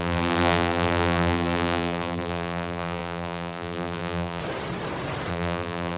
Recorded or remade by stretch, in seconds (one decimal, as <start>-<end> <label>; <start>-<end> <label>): 0.0-4.4 remade; 4.4-5.3 recorded; 5.3-6.0 remade